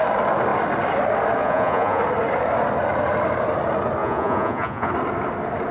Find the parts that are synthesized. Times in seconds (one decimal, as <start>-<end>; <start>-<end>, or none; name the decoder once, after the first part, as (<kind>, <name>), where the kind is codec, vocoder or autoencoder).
1.4-2.0 (vocoder, Vocos); 4.0-4.9